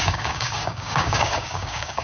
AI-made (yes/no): yes